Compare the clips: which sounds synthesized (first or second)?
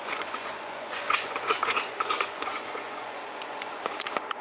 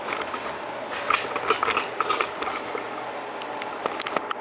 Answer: first